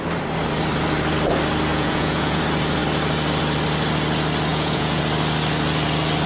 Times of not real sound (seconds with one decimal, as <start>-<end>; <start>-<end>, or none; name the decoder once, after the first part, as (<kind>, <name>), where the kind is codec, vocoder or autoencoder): 1.7-2.4 (vocoder, Vocos); 4.5-5.0

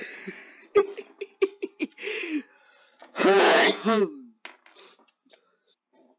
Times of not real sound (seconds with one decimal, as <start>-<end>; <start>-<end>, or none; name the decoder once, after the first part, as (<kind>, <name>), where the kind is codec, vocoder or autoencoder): 3.0-4.0 (vocoder, Vocos)

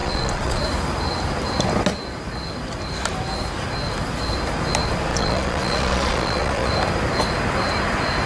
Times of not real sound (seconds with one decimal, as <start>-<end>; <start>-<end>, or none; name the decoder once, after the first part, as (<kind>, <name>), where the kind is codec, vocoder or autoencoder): 0.0-0.6 (vocoder, Vocos); 5.1-6.7

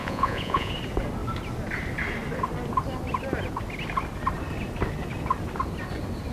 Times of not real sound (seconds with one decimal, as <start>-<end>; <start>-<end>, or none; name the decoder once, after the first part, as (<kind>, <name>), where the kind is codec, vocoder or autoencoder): 0.0-0.7 (vocoder, Vocos)

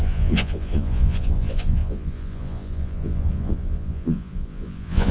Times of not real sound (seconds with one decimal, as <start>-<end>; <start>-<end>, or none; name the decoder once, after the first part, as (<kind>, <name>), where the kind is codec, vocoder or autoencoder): 0.0-5.1 (vocoder, Vocos)

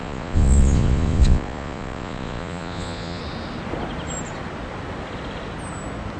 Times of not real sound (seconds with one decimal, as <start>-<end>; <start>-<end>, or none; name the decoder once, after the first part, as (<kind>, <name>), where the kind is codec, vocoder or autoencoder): 0.0-3.2 (vocoder, Vocos)